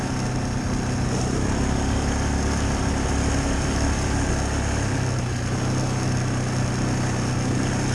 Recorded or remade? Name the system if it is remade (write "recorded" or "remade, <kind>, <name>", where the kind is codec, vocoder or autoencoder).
recorded